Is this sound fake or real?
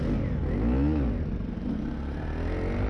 real